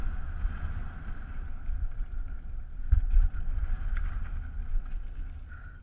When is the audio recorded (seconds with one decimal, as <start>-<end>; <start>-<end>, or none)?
0.0-0.8; 3.0-5.8